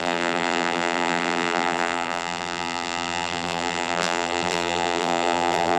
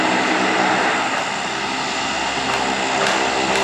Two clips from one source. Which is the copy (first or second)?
first